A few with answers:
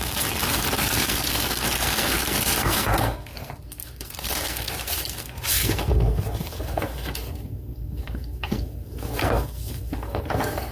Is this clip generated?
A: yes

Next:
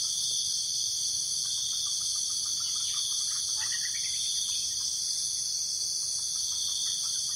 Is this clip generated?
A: no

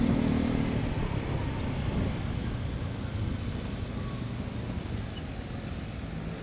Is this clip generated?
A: no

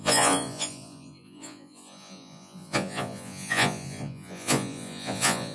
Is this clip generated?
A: yes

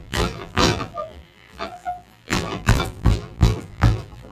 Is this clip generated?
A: yes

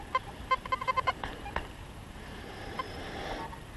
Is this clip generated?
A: yes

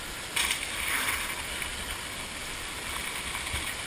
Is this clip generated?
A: no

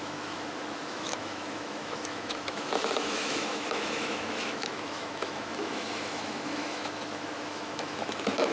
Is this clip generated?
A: yes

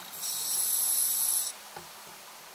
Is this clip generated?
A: no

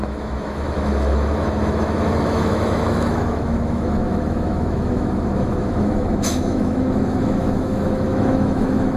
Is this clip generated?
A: yes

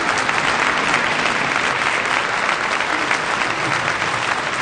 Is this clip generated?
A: no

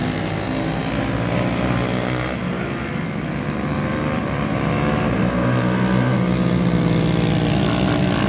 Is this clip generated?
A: no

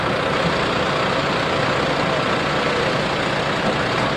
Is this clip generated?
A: no